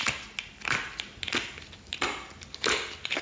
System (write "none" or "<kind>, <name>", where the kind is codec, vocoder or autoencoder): none